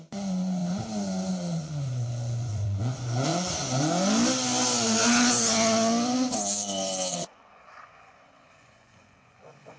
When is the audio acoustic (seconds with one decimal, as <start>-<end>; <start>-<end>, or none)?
0.6-1.3; 3.3-7.1